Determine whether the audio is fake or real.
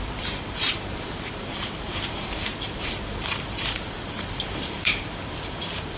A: fake